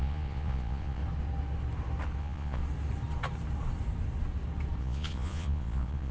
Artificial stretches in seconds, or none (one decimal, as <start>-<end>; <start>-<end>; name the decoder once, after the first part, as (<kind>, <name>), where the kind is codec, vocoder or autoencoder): 0.0-1.0 (vocoder, Vocos); 2.2-2.6; 4.8-6.1